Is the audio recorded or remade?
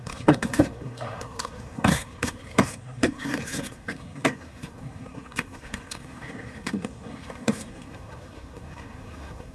remade